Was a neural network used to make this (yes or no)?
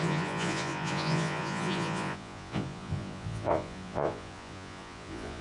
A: yes